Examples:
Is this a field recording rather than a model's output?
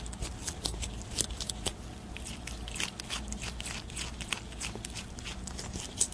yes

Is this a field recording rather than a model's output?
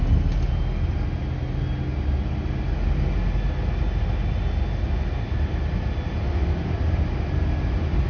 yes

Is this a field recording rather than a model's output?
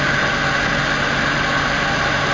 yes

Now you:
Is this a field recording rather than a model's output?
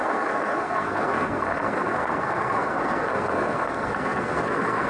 no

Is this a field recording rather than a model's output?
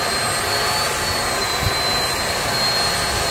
yes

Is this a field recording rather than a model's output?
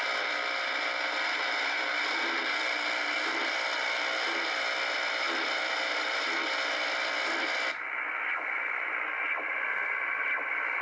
yes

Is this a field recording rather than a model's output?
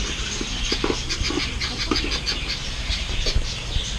yes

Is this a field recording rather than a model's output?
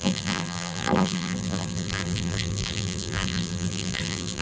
no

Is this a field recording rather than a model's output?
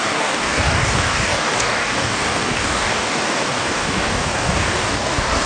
no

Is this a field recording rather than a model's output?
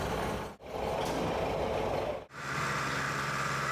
yes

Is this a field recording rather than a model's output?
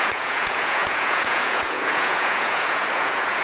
no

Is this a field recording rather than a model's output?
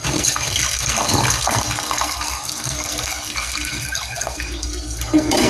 no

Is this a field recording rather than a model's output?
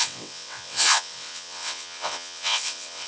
no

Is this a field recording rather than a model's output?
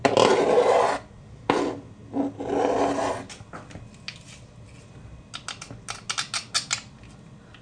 yes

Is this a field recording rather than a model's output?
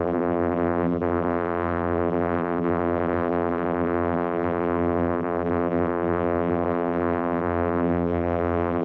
no